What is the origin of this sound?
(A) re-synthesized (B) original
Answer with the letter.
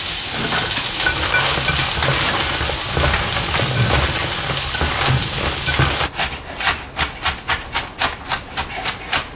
B